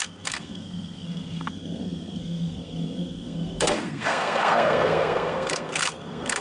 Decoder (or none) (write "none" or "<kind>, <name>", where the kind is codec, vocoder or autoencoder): codec, SNAC